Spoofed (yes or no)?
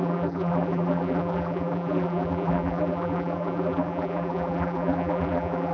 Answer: yes